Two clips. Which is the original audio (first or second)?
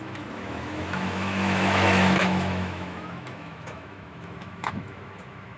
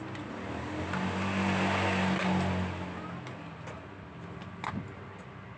second